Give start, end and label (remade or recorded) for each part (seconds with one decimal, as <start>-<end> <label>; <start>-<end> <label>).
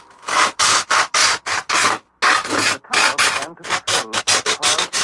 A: 0.0-1.2 remade; 1.2-4.2 recorded; 4.2-5.0 remade